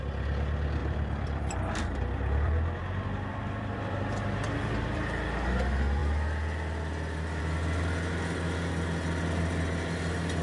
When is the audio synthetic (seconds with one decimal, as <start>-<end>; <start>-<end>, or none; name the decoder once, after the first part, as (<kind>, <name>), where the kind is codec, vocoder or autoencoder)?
0.8-4.4 (vocoder, BigVGAN v2)